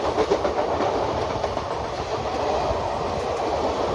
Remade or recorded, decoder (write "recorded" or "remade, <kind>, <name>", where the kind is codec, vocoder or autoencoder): recorded